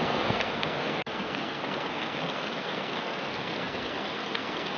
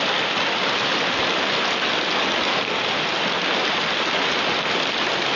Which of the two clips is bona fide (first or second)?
second